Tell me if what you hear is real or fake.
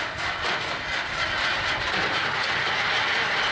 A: real